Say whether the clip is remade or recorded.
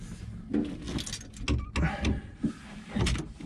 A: recorded